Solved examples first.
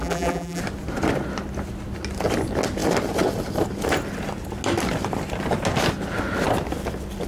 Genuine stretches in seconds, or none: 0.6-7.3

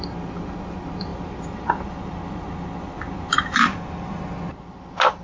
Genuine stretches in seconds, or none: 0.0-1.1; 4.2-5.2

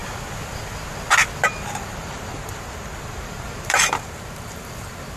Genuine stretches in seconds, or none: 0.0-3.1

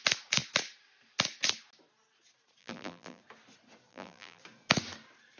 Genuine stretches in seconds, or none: 0.0-2.6; 3.2-3.9; 4.4-5.4

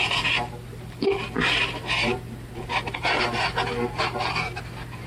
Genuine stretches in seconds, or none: 2.5-5.1